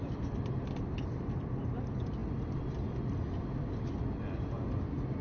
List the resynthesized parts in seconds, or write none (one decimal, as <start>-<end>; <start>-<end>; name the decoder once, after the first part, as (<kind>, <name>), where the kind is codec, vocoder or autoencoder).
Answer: none